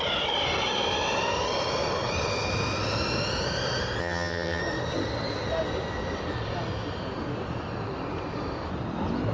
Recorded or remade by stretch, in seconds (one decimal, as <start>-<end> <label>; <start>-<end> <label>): 0.0-4.0 recorded; 4.0-4.6 remade; 4.6-9.3 recorded